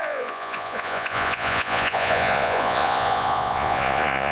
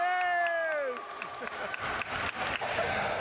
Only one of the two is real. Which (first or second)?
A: second